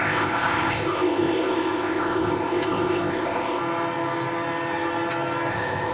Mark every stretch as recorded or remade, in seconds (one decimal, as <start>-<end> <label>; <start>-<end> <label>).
0.0-3.6 remade; 3.6-5.5 recorded; 5.5-5.9 remade